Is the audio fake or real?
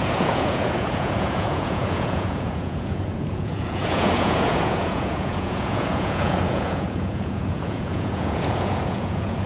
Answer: fake